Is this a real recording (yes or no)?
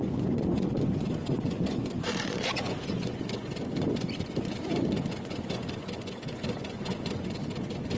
no